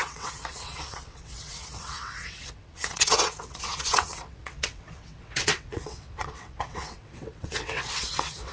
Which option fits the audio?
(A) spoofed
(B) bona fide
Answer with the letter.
A